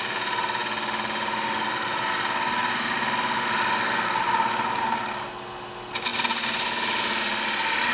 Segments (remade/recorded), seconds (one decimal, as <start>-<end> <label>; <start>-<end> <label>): 0.0-7.9 recorded